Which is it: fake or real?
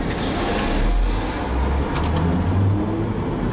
real